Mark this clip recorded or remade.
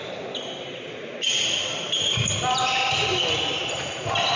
recorded